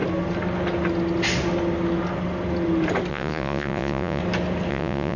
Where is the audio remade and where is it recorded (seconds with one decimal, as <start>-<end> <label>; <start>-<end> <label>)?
0.0-3.1 recorded; 3.1-4.2 remade; 4.2-4.7 recorded; 4.7-5.2 remade